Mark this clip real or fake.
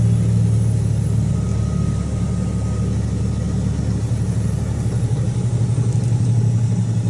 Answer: real